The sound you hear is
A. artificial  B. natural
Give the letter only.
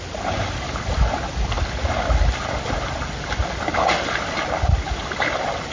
B